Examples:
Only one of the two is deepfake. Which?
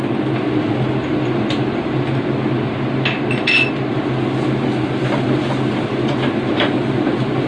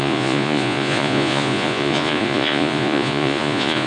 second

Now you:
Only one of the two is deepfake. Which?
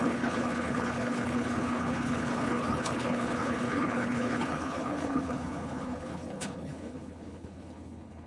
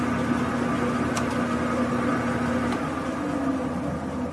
first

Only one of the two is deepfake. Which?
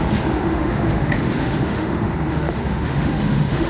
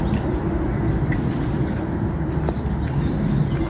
first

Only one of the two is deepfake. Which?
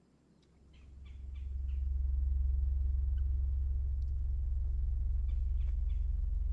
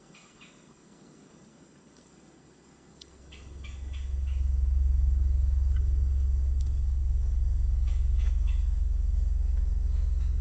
second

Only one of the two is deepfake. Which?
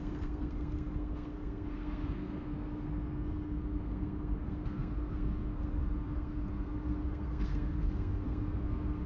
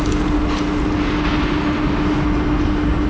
first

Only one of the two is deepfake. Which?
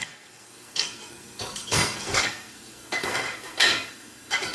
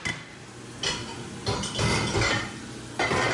first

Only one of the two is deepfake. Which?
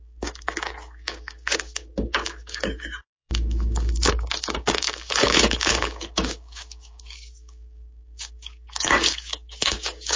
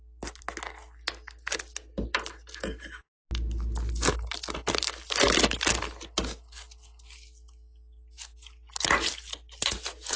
first